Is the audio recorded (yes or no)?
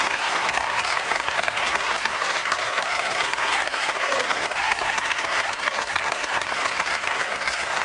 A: no